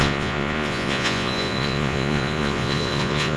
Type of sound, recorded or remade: remade